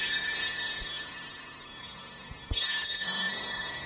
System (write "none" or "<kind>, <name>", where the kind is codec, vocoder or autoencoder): codec, SNAC